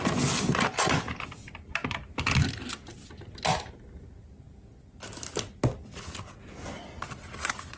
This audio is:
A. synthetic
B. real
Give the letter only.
B